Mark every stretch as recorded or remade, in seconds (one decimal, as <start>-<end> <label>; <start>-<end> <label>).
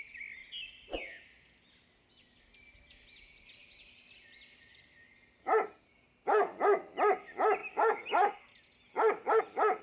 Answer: 0.0-9.8 recorded